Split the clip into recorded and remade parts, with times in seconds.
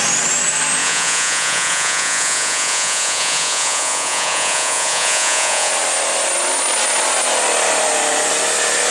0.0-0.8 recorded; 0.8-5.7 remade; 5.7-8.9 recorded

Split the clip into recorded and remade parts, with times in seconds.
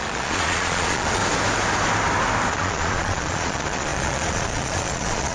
0.0-1.2 remade; 1.2-2.5 recorded; 2.5-5.3 remade